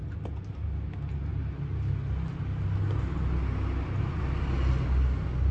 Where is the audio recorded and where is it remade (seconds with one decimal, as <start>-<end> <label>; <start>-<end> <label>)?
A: 0.0-5.5 recorded